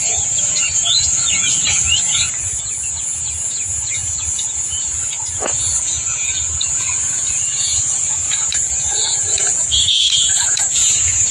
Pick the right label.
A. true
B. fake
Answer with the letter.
B